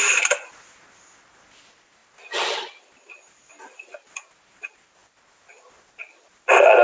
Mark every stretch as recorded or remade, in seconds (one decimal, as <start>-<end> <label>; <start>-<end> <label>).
0.0-6.8 recorded